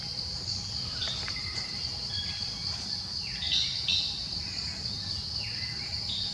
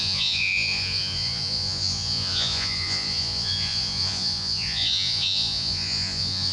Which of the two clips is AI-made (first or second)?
second